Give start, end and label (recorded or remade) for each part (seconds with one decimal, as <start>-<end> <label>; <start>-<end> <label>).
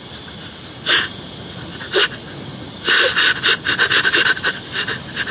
0.0-1.7 recorded; 1.7-2.5 remade; 2.5-5.3 recorded